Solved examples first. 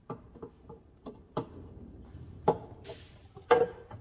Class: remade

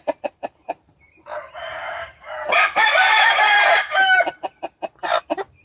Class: remade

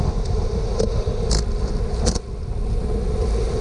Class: recorded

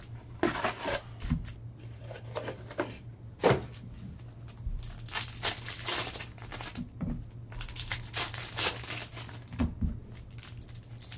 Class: recorded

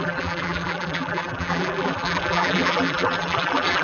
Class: remade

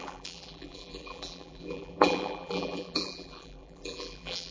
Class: remade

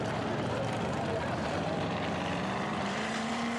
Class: remade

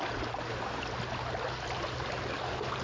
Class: recorded